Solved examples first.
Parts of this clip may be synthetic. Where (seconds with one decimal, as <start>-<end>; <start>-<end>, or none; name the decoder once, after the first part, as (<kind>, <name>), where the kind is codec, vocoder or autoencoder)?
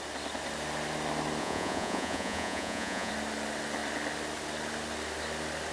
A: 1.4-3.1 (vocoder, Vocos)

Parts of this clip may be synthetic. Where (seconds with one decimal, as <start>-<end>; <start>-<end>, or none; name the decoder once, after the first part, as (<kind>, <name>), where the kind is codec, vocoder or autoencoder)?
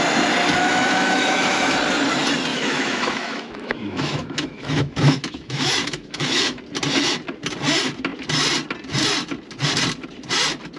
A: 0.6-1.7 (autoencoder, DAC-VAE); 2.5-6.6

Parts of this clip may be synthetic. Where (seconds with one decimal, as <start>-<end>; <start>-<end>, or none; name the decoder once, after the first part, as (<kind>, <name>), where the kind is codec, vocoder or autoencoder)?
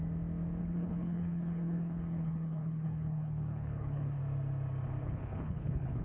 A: 0.6-4.2 (codec, HILCodec); 5.0-6.0